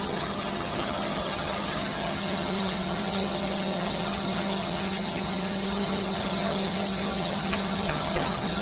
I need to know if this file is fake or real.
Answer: fake